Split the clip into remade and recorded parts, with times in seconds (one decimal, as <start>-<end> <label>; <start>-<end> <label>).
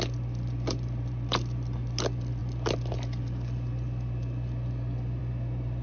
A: 0.0-5.8 recorded